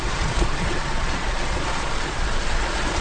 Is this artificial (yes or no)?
yes